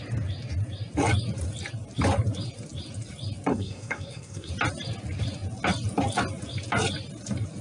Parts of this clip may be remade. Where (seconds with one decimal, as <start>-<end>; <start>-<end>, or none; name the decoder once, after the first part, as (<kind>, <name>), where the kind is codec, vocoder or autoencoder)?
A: 3.5-4.5 (codec, SNAC)